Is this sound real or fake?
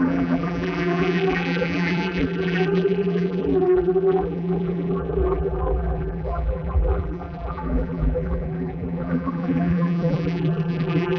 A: fake